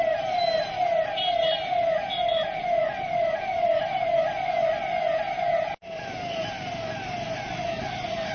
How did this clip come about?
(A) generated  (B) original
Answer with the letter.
B